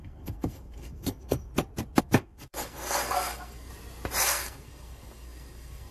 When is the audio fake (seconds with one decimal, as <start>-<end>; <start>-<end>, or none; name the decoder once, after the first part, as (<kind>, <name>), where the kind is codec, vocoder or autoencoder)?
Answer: 0.0-1.5 (codec, SNAC); 2.0-3.7; 4.2-5.9